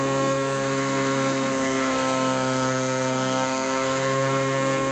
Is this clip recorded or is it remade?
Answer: remade